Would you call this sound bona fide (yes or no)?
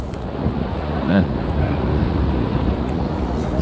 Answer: no